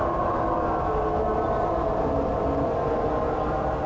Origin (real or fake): real